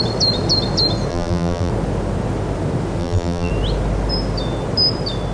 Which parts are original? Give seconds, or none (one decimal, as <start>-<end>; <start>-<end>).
0.0-1.1; 1.7-3.0; 3.5-5.3